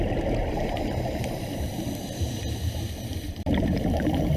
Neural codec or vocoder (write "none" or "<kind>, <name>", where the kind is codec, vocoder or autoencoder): vocoder, BigVGAN v2